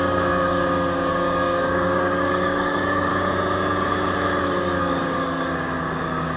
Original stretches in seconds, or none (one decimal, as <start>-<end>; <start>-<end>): 3.1-4.4